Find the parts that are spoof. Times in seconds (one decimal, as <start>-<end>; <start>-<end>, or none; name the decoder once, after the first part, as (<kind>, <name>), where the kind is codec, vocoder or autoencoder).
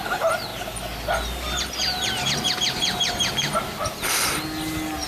none